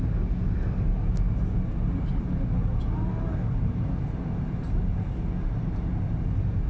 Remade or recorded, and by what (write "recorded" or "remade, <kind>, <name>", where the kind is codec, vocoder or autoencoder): recorded